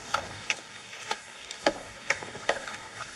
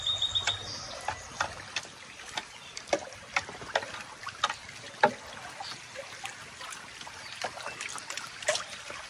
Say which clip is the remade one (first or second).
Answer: first